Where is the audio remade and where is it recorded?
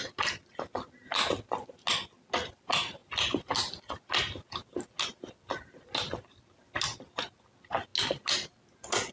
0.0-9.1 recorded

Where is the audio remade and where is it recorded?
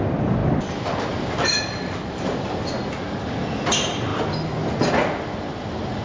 0.0-6.0 recorded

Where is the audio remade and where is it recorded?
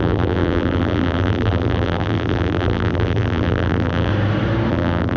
0.0-4.1 remade; 4.1-4.7 recorded; 4.7-5.2 remade